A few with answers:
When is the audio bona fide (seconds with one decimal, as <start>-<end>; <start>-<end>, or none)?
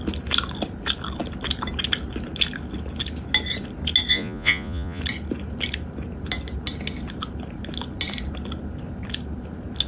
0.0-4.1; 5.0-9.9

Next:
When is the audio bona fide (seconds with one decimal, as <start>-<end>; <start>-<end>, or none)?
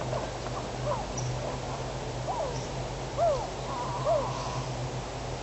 0.0-5.4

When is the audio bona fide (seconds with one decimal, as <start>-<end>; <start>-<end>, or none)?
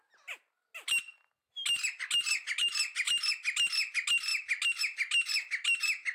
0.0-6.1